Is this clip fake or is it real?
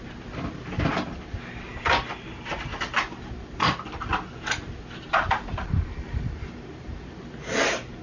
real